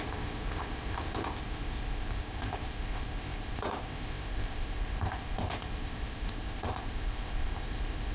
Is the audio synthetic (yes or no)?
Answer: yes